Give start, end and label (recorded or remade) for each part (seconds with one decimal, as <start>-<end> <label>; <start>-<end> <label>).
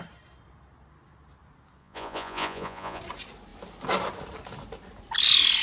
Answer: 0.0-1.8 recorded; 1.8-3.0 remade; 3.0-5.6 recorded